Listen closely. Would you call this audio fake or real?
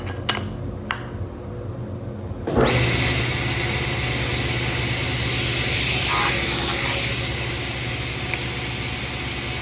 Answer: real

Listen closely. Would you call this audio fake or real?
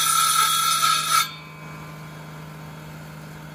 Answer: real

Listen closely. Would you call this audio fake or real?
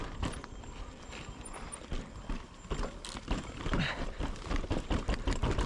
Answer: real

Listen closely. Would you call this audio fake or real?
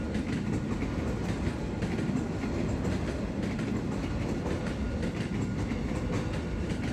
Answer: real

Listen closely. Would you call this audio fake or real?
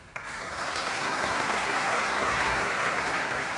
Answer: fake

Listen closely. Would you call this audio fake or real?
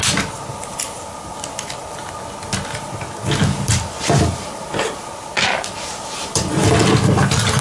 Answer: real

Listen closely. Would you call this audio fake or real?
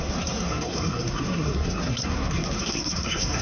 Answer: fake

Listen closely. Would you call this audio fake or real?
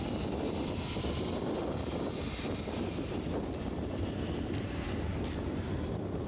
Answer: real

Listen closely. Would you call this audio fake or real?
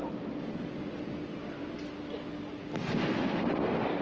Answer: real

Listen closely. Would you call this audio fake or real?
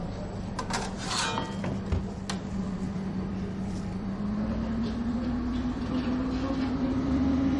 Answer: real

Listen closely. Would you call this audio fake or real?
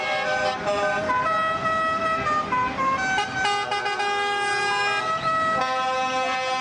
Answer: real